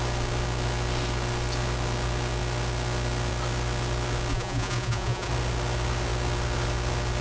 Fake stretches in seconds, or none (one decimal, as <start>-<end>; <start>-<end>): 4.3-5.3